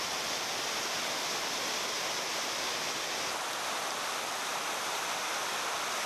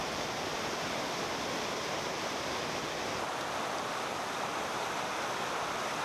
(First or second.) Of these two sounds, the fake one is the second